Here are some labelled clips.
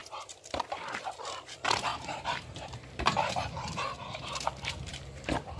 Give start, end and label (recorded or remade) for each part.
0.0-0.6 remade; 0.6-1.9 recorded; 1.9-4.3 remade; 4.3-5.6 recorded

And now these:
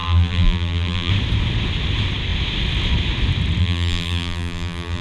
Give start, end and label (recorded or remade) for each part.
0.0-1.1 remade; 1.1-3.6 recorded; 3.6-5.0 remade

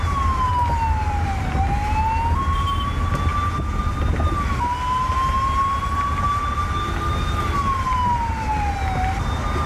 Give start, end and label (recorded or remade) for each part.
0.0-9.7 recorded

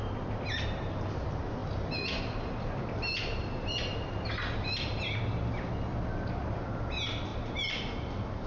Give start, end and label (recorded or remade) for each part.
0.0-7.3 recorded; 7.3-7.9 remade; 7.9-8.5 recorded

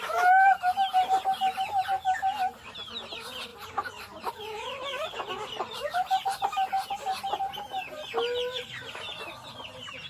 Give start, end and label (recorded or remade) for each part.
0.0-3.5 recorded; 3.5-4.3 remade; 4.3-10.1 recorded